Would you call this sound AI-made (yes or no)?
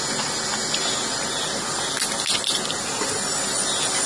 no